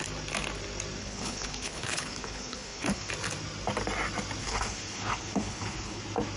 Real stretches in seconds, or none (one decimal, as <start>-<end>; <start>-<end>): 0.0-1.0; 3.1-4.4; 6.0-6.4